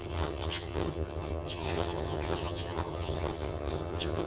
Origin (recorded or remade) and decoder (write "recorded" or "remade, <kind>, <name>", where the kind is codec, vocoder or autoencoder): remade, vocoder, HiFi-GAN